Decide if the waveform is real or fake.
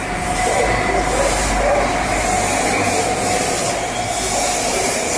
fake